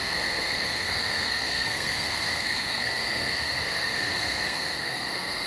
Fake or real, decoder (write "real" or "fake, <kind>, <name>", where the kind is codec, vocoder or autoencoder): fake, codec, SNAC